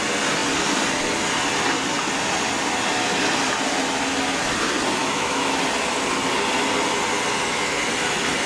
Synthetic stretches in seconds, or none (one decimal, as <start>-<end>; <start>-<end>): 5.0-5.6